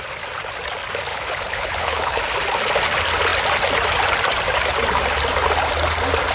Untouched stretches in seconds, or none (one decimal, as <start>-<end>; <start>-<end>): 0.0-1.1; 2.2-6.3